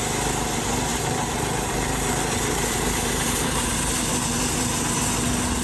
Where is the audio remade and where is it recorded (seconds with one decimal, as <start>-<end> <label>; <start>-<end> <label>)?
0.0-0.9 recorded; 0.9-4.1 remade; 4.1-5.6 recorded